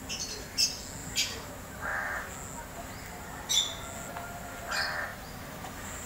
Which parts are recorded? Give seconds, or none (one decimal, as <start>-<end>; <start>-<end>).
0.0-1.0; 1.5-5.1